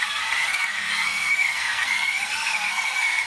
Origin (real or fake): fake